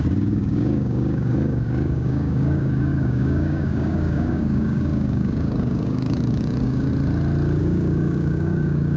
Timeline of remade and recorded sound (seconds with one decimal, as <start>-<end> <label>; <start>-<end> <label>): 0.0-6.9 remade; 6.9-7.6 recorded; 7.6-9.0 remade